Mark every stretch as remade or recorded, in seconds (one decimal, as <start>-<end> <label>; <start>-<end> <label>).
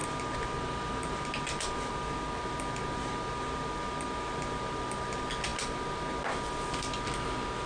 0.0-7.7 recorded